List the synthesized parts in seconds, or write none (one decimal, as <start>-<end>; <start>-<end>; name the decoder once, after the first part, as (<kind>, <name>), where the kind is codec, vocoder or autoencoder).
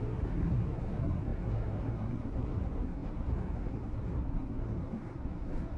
0.0-5.8 (codec, SNAC)